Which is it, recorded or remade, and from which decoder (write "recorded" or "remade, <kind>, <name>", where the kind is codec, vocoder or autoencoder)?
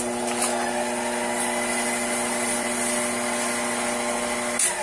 recorded